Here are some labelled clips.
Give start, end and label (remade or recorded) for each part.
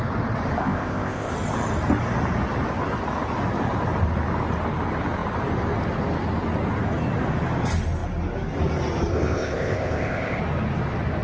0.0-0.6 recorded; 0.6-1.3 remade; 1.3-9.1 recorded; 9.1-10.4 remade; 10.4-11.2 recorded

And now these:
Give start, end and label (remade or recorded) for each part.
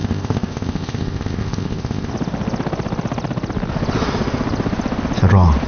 0.0-2.1 remade; 2.1-5.7 recorded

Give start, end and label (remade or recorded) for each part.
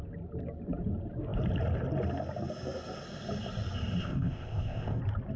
0.0-4.0 recorded; 4.0-5.0 remade; 5.0-5.4 recorded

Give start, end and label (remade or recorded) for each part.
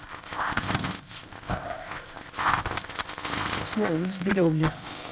0.0-5.1 remade